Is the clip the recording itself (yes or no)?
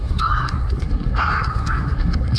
no